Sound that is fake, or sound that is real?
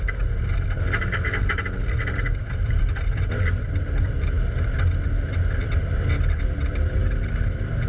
real